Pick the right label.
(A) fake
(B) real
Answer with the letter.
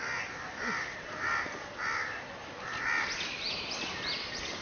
B